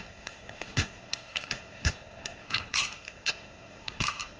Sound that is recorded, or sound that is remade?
remade